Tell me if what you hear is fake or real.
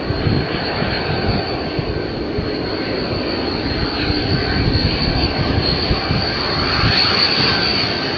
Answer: real